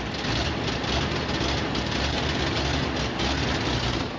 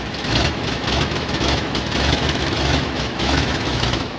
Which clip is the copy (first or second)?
second